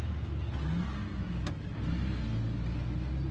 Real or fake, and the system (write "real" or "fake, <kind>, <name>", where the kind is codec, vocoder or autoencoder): real